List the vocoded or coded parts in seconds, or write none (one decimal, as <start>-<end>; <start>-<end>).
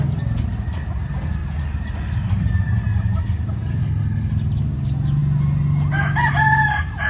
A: 3.8-4.3